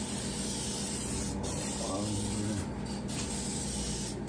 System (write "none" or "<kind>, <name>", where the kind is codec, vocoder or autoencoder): none